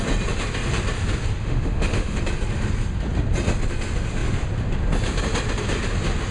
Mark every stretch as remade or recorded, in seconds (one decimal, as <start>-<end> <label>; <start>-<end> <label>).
0.0-1.4 recorded; 1.4-2.2 remade; 2.2-6.3 recorded